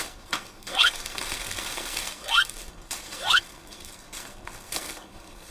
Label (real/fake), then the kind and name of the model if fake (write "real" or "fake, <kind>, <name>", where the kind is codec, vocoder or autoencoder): fake, codec, SNAC